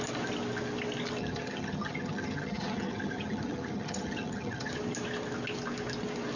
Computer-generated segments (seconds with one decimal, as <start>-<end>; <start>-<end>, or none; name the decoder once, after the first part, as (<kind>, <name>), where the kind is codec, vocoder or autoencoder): 1.2-4.7 (vocoder, HiFi-GAN)